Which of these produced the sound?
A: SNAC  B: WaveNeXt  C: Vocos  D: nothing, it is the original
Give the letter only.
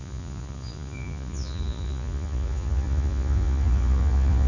C